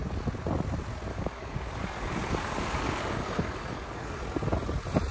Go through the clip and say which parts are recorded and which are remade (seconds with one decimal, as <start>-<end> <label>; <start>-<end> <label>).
0.0-1.1 recorded; 1.1-4.2 remade; 4.2-5.1 recorded